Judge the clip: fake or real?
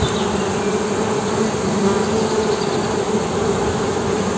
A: real